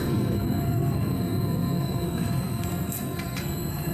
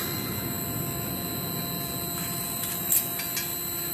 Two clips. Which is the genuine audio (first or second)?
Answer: second